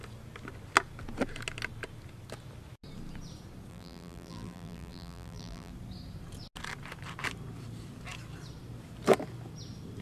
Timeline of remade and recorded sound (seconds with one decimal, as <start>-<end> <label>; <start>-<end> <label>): 0.0-3.7 recorded; 3.7-5.7 remade; 5.7-10.0 recorded